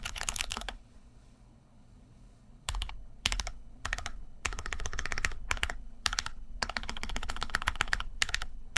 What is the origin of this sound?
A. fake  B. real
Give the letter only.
A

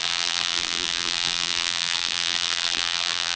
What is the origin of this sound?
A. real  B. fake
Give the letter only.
B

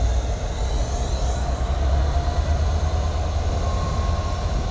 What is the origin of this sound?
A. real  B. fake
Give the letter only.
A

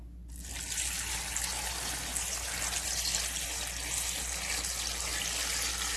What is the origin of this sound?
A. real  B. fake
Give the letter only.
A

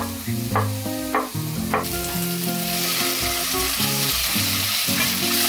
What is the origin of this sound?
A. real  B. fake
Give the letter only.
A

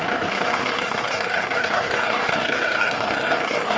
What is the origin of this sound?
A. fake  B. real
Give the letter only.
A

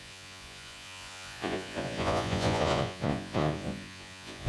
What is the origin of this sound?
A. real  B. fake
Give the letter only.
B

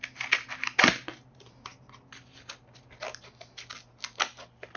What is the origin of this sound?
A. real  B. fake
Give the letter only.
A